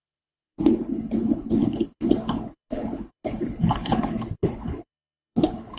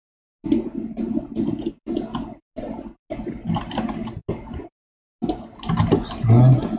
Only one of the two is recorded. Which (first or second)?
second